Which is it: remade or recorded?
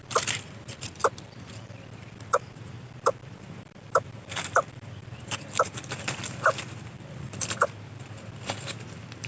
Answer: remade